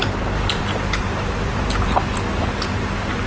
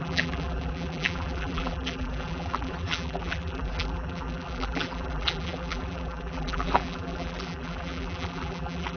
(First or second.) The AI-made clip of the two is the second